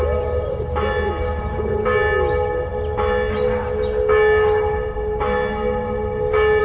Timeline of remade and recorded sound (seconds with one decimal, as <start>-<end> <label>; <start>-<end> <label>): 0.0-6.6 recorded